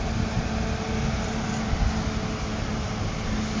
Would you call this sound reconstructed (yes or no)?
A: no